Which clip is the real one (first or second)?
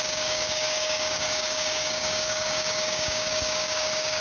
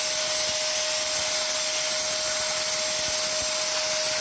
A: second